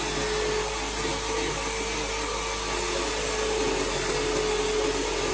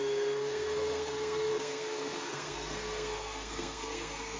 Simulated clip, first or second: second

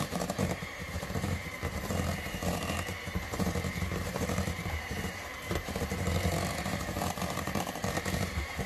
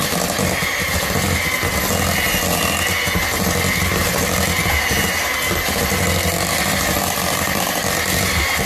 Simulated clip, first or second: first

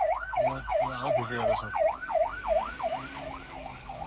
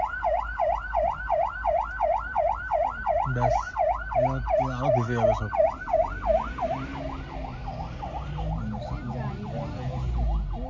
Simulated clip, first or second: first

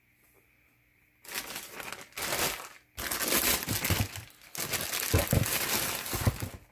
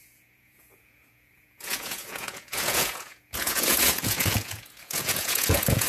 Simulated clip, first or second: second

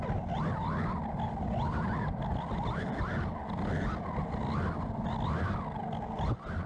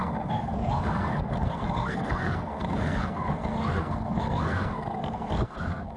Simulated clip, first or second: second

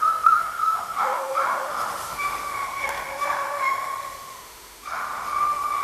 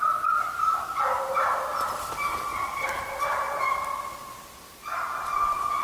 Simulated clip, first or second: first